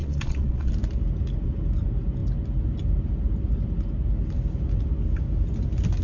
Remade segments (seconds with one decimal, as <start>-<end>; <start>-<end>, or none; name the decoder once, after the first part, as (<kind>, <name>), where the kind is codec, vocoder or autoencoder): 0.0-0.7 (vocoder, Vocos)